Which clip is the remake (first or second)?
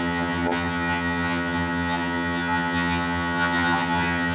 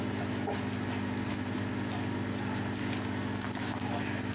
first